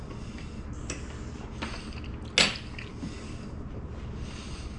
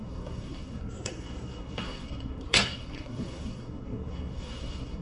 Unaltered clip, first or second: first